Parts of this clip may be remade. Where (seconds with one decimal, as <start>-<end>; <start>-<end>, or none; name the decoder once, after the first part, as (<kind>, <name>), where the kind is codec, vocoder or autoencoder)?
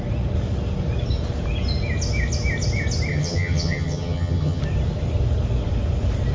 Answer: 3.1-4.6 (vocoder, HiFi-GAN)